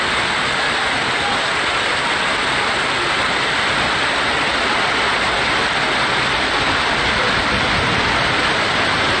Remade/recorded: recorded